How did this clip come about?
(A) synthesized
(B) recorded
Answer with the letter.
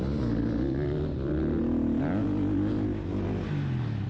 B